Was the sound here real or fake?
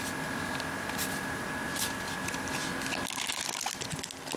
real